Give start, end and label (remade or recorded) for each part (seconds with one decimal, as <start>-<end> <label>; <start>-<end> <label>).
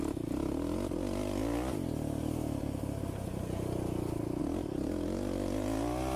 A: 0.0-6.2 recorded